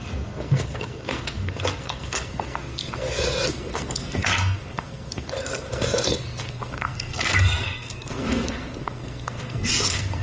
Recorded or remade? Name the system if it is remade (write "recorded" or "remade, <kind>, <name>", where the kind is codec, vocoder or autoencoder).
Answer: remade, codec, SNAC